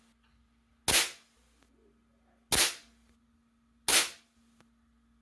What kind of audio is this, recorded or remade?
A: recorded